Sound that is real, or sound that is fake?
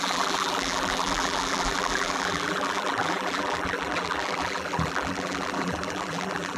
fake